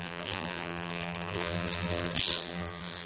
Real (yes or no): no